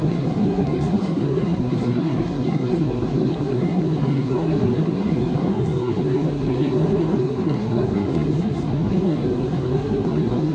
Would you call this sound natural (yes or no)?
no